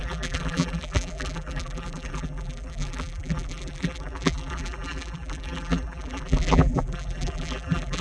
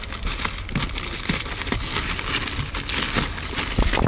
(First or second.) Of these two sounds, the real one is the second